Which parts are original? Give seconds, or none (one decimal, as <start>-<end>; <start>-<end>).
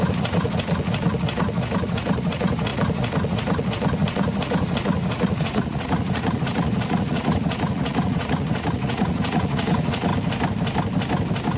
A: 10.1-11.6